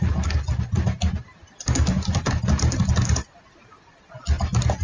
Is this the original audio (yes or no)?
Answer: yes